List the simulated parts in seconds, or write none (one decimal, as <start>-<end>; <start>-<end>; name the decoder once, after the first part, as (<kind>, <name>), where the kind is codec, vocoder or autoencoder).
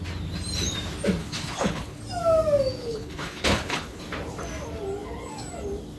1.2-2.0 (codec, HILCodec); 2.8-4.0